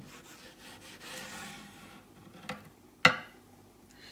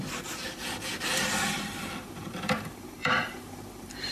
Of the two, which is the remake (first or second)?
second